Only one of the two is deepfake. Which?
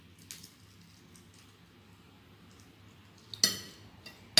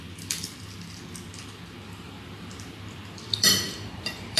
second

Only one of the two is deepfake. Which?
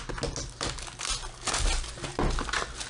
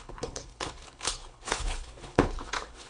second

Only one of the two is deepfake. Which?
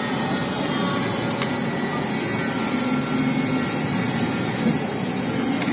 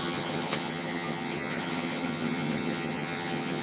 second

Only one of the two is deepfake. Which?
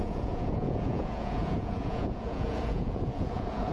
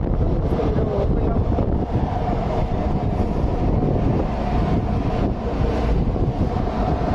first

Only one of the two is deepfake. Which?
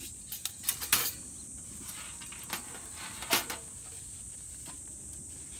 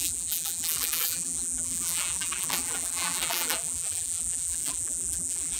second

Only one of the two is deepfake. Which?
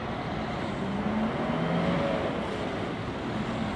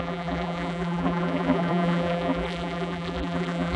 second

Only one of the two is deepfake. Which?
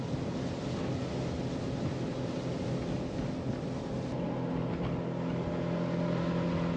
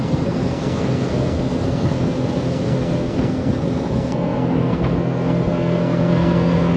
second